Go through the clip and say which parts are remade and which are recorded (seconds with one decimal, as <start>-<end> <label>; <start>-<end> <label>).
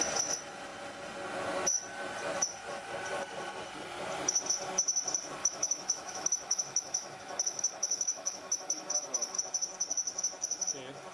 0.0-5.4 recorded; 5.4-9.4 remade; 9.4-11.1 recorded